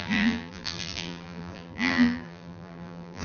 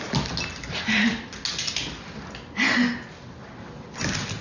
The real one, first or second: second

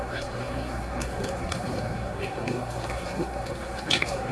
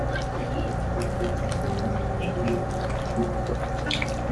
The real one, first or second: second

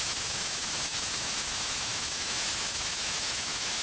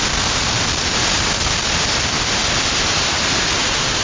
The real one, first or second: second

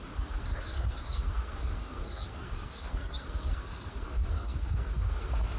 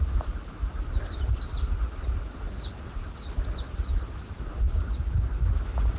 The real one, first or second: second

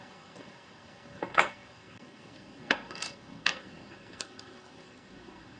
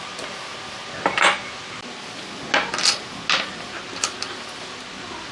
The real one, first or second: second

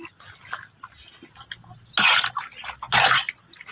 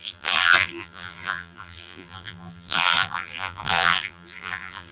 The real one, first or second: first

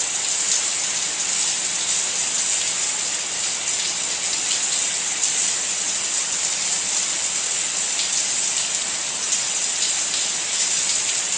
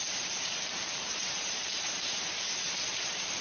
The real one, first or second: first